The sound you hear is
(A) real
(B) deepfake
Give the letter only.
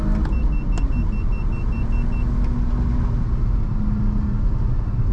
A